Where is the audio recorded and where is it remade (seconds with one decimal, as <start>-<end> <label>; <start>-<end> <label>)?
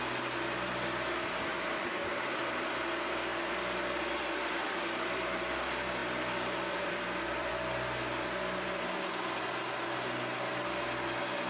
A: 0.0-1.5 recorded; 1.5-2.4 remade; 2.4-6.0 recorded; 6.0-7.5 remade; 7.5-11.5 recorded